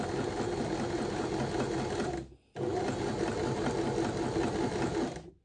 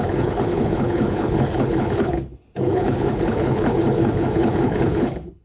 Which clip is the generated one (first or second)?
second